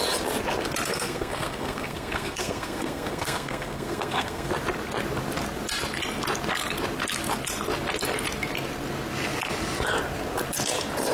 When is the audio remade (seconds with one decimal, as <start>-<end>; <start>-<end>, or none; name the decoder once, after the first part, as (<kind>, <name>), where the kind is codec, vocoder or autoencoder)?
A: 0.9-4.5 (codec, SNAC)